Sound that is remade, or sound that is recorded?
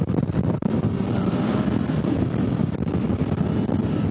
recorded